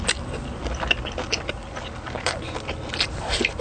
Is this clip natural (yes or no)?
yes